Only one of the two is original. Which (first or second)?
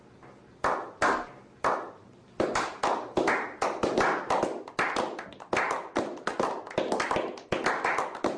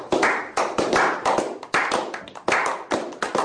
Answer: first